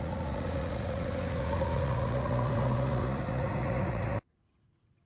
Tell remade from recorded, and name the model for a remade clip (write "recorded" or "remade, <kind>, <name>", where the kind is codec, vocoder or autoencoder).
remade, vocoder, Vocos